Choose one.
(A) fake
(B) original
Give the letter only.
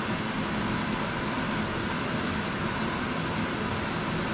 B